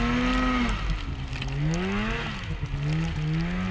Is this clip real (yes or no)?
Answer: yes